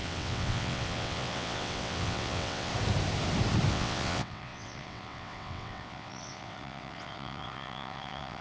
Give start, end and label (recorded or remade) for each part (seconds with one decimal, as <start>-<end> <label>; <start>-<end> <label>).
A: 0.0-2.7 remade; 2.7-3.7 recorded; 3.7-8.4 remade